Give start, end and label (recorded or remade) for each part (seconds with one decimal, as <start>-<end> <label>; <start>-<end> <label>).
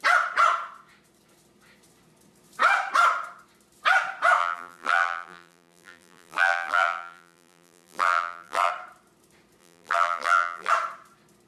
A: 0.0-4.4 recorded; 4.4-8.7 remade; 8.7-9.6 recorded; 9.6-10.7 remade; 10.7-11.5 recorded